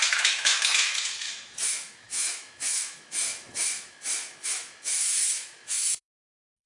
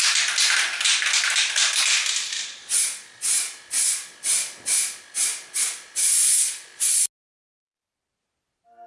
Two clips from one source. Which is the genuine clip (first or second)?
second